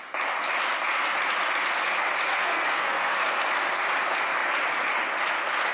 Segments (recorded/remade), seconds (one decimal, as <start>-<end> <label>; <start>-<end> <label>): 0.0-2.3 recorded; 2.3-3.4 remade; 3.4-5.7 recorded